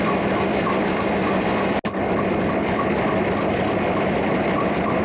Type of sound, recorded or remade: recorded